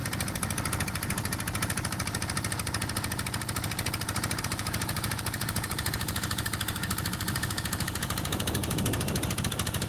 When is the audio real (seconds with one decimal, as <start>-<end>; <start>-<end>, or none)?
0.0-4.4